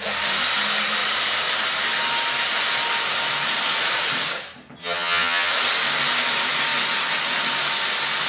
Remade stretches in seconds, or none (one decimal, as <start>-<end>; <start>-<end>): 4.8-5.5